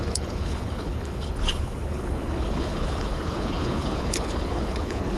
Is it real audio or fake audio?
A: fake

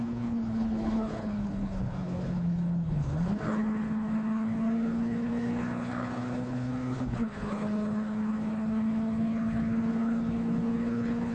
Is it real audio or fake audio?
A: fake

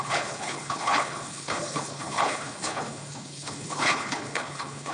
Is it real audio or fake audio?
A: fake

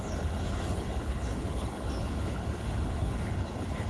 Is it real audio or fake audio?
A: fake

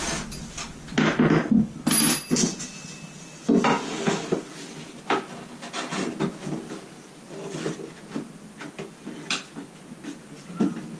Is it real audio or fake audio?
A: real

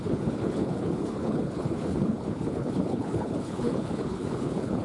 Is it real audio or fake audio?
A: fake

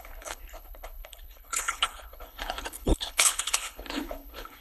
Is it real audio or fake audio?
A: fake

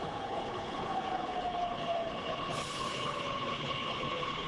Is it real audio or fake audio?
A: fake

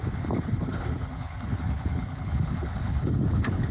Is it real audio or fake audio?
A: fake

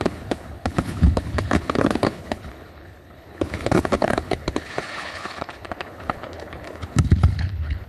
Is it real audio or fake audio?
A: fake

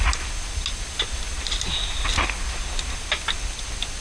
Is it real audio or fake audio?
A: real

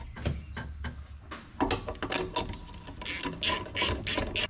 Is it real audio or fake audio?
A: real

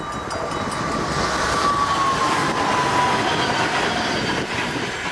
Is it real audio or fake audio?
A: real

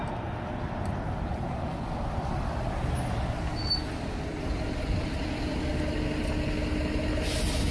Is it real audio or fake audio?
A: real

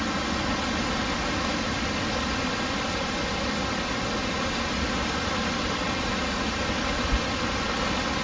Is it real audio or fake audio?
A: real